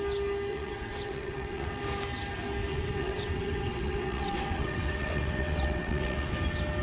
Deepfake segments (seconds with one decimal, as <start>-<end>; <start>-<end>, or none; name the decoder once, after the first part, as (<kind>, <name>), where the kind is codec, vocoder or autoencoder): 0.5-1.8 (vocoder, WaveNeXt); 2.7-6.3